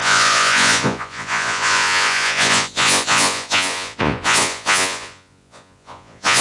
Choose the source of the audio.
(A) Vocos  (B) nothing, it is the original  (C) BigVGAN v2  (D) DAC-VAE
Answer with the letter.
A